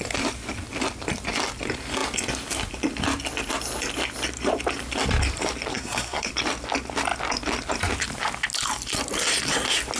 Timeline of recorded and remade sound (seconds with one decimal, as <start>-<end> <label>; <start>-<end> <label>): 0.0-5.7 recorded; 5.7-6.3 remade; 6.3-10.0 recorded